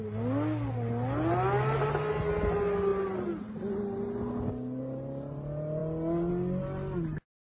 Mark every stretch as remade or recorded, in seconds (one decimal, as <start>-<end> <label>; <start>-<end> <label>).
0.0-7.5 recorded